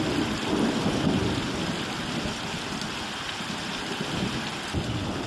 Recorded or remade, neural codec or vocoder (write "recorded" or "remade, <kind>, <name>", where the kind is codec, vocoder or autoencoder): recorded